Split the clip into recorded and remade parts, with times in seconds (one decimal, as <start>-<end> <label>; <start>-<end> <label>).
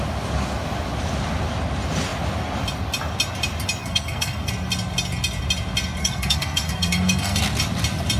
0.0-3.8 recorded; 3.8-4.5 remade; 4.5-6.0 recorded; 6.0-7.4 remade; 7.4-8.2 recorded